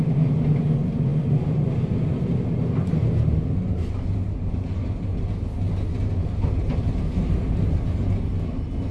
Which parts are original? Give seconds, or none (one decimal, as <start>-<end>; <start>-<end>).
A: 0.0-8.9